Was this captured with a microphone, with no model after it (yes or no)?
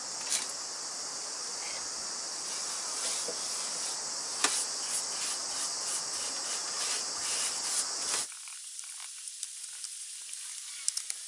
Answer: yes